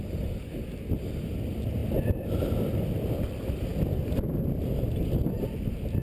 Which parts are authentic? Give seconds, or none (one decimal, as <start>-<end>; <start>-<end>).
0.0-6.0